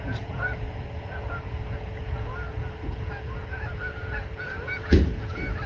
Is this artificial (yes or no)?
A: yes